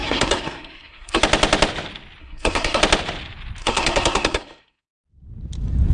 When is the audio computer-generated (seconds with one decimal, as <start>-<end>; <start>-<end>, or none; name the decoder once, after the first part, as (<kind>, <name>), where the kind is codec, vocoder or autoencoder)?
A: 0.0-1.2 (codec, SNAC); 2.2-2.8; 3.6-4.9